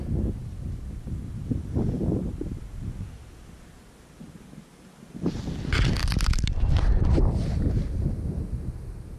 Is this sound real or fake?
real